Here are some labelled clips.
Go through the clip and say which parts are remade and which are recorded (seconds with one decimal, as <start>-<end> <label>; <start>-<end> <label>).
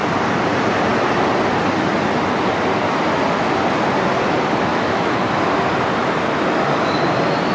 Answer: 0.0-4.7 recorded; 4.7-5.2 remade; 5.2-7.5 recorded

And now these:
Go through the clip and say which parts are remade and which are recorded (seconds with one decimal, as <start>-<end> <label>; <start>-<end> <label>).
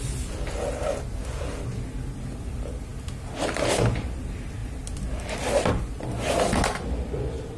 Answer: 0.0-7.6 recorded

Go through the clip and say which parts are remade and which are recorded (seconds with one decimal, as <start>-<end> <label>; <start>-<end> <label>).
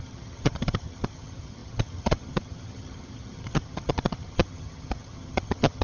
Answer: 0.0-5.8 remade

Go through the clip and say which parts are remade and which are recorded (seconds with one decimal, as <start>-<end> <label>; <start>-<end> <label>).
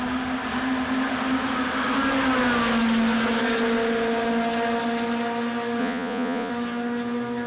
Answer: 0.0-5.8 recorded; 5.8-6.5 remade; 6.5-7.5 recorded